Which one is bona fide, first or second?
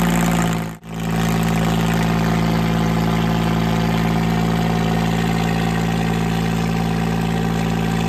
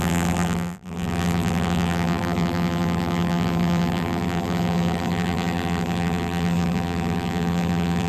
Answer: first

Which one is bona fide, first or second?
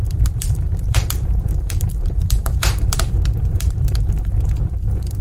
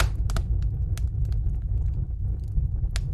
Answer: second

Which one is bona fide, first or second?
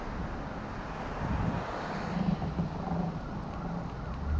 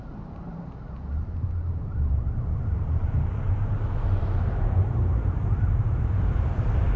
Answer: first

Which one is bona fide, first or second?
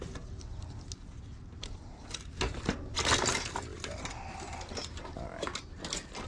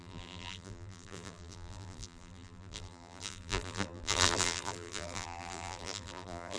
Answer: first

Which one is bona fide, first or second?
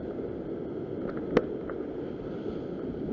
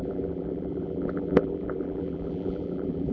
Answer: first